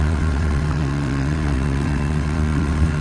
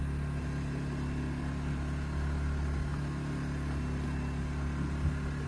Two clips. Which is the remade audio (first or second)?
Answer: first